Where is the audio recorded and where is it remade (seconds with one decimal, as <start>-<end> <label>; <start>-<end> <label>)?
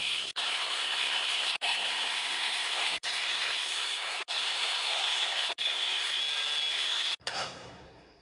0.0-6.2 remade; 6.2-6.7 recorded; 6.7-8.2 remade